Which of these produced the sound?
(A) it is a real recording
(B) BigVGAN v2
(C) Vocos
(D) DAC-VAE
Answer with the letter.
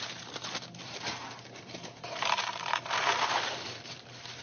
B